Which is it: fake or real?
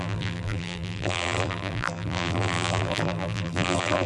fake